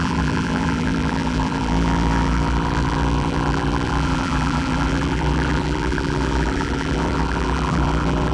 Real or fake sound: fake